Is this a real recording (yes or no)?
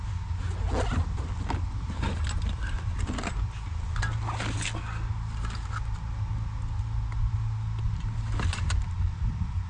yes